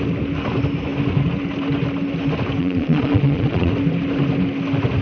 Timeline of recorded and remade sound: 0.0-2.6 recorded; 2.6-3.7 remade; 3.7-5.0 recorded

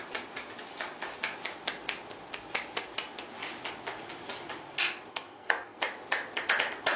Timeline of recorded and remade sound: 0.0-5.1 recorded; 5.1-5.8 remade; 5.8-7.0 recorded

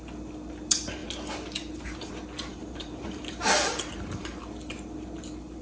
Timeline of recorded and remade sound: 0.0-2.5 recorded; 2.5-4.4 remade; 4.4-5.6 recorded

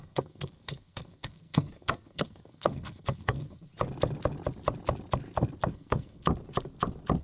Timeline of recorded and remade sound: 0.0-3.7 remade; 3.7-5.7 recorded; 5.7-6.3 remade; 6.3-7.2 recorded

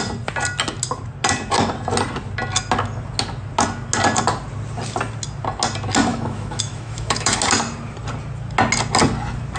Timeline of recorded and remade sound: 0.0-6.1 recorded; 6.1-7.4 remade; 7.4-9.6 recorded

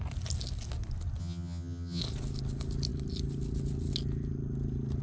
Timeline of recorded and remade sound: 0.0-1.2 recorded; 1.2-2.0 remade; 2.0-5.0 recorded